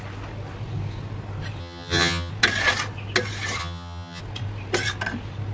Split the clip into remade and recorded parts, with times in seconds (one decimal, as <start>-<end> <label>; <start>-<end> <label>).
0.0-1.6 recorded; 1.6-2.3 remade; 2.3-3.6 recorded; 3.6-4.2 remade; 4.2-5.5 recorded